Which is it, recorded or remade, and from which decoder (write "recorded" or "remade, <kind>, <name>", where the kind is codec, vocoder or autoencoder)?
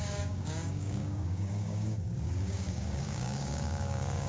remade, codec, DAC